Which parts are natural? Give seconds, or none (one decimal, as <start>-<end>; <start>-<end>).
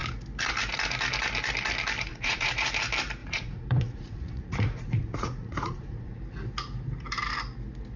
0.0-2.1; 2.7-3.2; 6.2-8.0